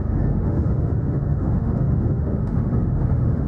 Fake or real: fake